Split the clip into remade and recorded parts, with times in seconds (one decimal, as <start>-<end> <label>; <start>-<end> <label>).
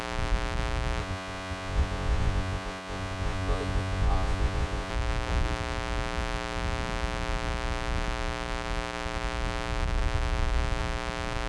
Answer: 0.0-1.0 recorded; 1.0-4.9 remade; 4.9-11.5 recorded